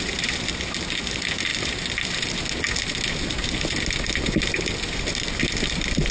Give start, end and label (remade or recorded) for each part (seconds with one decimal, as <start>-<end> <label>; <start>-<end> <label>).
0.0-6.1 recorded